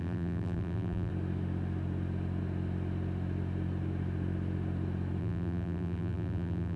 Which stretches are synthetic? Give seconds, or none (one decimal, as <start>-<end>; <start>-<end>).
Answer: 0.0-1.1; 5.2-6.8